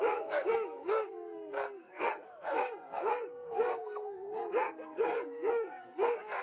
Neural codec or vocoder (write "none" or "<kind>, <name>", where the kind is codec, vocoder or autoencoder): codec, SNAC